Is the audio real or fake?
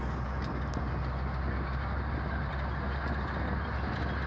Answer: real